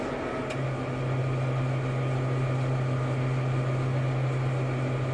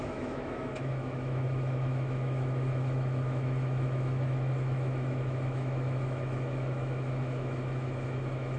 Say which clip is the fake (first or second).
second